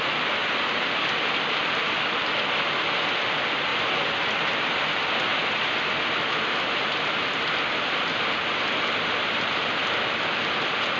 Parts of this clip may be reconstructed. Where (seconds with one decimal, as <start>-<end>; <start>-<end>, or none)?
0.0-3.7; 4.3-5.3; 7.4-11.0